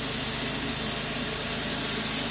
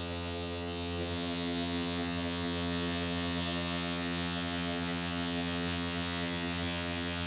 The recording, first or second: first